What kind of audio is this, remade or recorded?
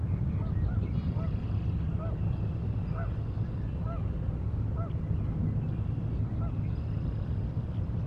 recorded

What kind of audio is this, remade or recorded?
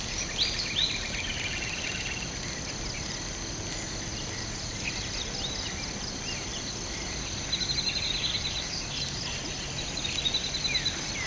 recorded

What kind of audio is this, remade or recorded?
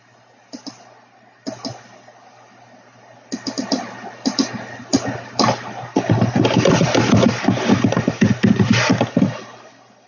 recorded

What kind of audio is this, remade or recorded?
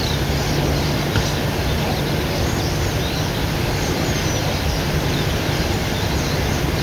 recorded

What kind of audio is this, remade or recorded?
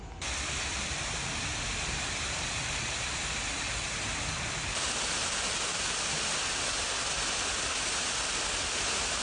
recorded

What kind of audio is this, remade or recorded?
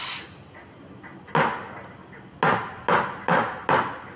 recorded